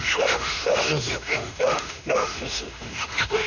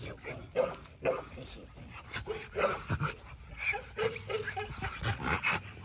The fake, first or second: first